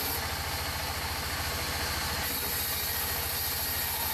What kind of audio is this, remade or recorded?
recorded